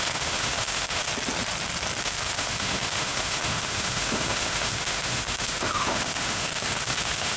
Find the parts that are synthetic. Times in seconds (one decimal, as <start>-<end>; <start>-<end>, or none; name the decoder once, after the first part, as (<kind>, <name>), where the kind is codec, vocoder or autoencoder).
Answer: 0.0-1.1 (autoencoder, DAC-VAE); 2.0-7.4